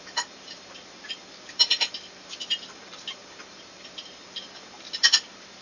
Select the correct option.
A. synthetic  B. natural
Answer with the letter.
A